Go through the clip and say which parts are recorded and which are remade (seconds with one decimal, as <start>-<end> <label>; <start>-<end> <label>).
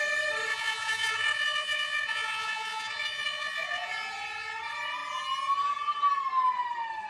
0.0-0.5 recorded; 0.5-3.9 remade; 3.9-7.1 recorded